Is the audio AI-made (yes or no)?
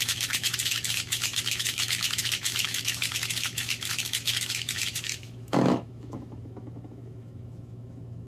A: yes